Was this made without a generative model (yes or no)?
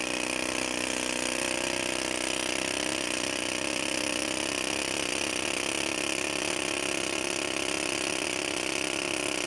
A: yes